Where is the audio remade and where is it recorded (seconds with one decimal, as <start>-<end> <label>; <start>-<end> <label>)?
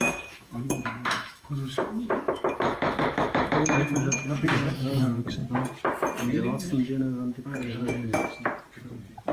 0.0-5.4 remade; 5.4-6.4 recorded; 6.4-8.2 remade; 8.2-9.3 recorded